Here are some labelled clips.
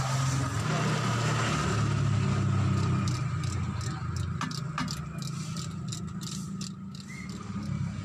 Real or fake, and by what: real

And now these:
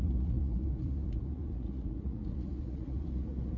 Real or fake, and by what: fake, vocoder, Vocos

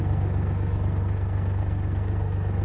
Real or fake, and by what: fake, codec, SNAC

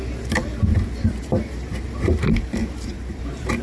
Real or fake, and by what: fake, vocoder, BigVGAN v2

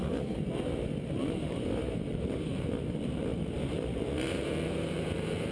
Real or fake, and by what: fake, vocoder, BigVGAN v2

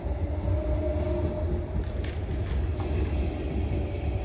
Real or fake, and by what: real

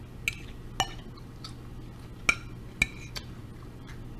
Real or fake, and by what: real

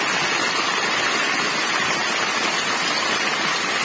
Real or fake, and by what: real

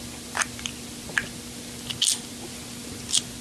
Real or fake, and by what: real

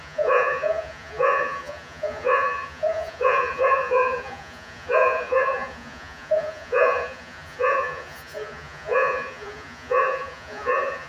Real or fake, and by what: fake, vocoder, Vocos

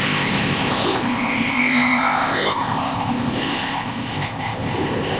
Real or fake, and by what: fake, codec, ZipCodec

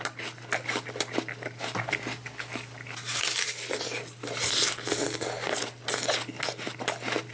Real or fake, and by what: real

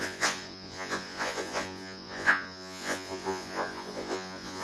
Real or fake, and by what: fake, vocoder, Vocos